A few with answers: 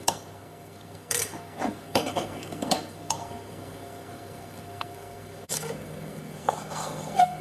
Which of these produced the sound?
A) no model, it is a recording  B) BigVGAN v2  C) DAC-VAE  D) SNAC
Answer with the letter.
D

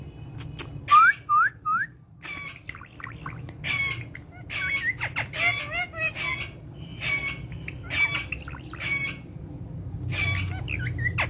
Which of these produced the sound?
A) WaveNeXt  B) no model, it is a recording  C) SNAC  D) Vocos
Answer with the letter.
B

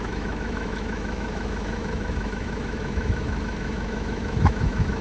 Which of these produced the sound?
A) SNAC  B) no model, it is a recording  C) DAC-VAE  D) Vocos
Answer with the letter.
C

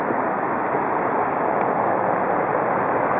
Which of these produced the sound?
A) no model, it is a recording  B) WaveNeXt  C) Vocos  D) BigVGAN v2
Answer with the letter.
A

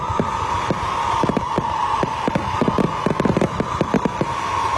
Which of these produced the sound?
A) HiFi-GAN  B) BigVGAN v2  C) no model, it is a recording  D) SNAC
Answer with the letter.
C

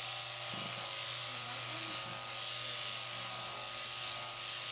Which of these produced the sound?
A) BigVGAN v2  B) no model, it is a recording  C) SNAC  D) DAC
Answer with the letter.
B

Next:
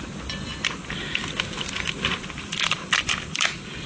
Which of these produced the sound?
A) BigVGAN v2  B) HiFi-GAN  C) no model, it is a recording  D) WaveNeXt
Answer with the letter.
C